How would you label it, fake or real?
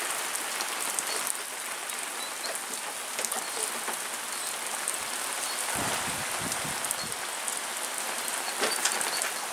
real